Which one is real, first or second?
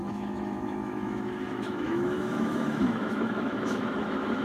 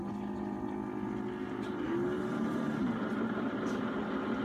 second